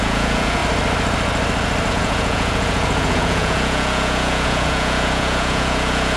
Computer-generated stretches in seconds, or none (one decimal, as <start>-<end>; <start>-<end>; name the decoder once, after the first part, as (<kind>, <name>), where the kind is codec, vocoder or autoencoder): 0.0-0.6 (vocoder, Vocos); 1.9-6.2